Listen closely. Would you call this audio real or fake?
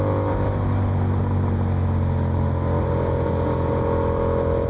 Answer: real